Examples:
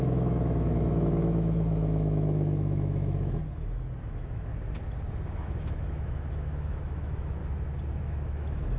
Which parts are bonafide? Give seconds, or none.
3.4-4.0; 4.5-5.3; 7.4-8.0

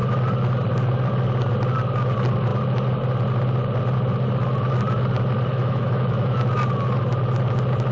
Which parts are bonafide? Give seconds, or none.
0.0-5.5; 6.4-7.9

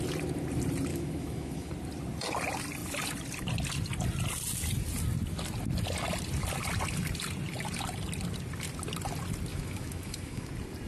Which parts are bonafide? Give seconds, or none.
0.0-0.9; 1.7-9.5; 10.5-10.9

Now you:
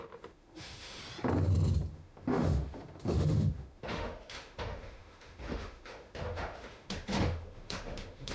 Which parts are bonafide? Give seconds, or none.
1.0-1.9